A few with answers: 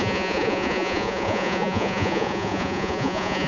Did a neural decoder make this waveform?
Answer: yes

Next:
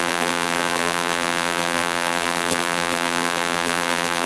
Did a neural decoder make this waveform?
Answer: yes